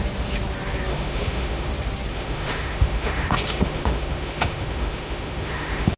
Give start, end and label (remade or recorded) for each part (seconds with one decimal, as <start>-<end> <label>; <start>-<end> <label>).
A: 0.0-0.9 recorded; 0.9-1.7 remade; 1.7-2.1 recorded; 2.1-6.0 remade

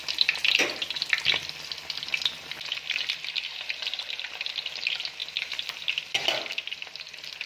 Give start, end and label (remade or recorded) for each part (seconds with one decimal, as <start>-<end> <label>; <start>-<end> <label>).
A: 0.0-7.5 recorded

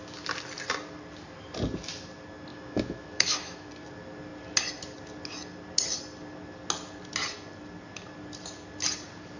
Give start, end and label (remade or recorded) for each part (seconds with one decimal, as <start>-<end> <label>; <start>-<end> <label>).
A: 0.0-2.5 recorded; 2.5-3.7 remade; 3.7-9.4 recorded

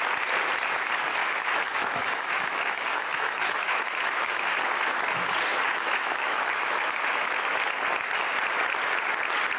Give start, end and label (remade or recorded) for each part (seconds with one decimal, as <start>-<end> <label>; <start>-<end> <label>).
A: 0.0-1.2 recorded; 1.2-4.6 remade; 4.6-5.5 recorded; 5.5-7.4 remade; 7.4-9.6 recorded

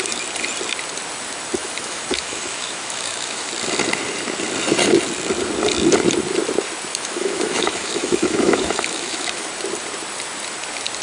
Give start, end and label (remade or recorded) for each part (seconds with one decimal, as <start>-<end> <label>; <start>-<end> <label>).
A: 0.0-1.6 recorded; 1.6-3.5 remade; 3.5-6.9 recorded; 6.9-9.5 remade; 9.5-11.0 recorded

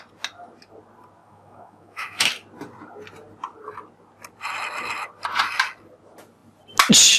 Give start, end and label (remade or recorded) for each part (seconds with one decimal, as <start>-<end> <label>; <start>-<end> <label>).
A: 0.0-1.2 recorded; 1.2-2.3 remade; 2.3-7.2 recorded